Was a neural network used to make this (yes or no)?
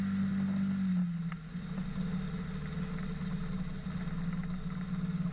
no